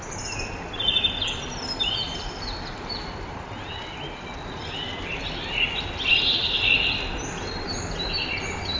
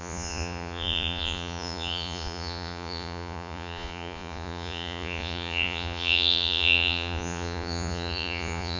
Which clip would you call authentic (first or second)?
first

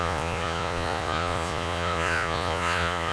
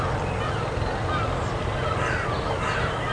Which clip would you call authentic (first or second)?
second